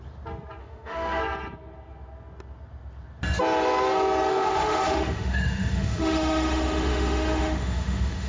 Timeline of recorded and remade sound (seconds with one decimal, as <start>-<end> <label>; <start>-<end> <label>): 0.0-0.6 recorded; 0.6-1.2 remade; 1.2-4.3 recorded; 4.3-8.3 remade